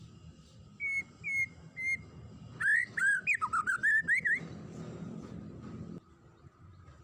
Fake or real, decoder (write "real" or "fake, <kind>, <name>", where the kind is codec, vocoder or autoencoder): real